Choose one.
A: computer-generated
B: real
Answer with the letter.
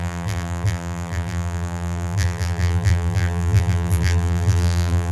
A